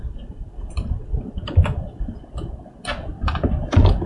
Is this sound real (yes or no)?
no